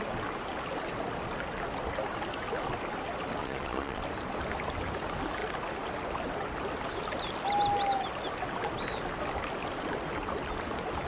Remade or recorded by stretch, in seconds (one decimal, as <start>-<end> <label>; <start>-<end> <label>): 0.0-3.4 recorded; 3.4-4.0 remade; 4.0-11.1 recorded